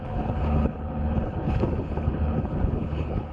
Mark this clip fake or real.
fake